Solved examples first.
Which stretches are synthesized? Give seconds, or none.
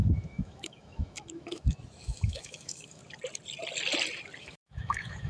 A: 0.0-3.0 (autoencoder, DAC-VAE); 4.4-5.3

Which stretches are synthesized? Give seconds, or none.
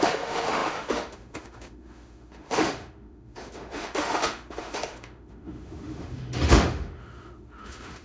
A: 0.0-8.0 (autoencoder, DAC-VAE)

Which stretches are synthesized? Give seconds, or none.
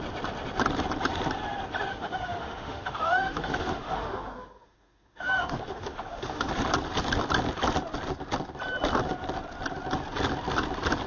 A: 1.9-6.5 (autoencoder, DAC-VAE)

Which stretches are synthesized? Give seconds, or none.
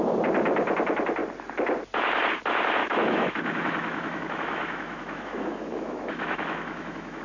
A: 2.8-7.2 (autoencoder, DAC-VAE)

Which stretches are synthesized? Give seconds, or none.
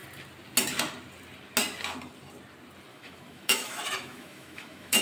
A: 2.9-5.0 (autoencoder, DAC-VAE)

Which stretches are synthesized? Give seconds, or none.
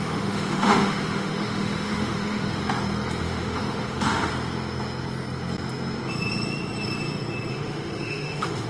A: 0.0-2.6 (autoencoder, DAC-VAE); 3.2-4.3; 7.5-8.7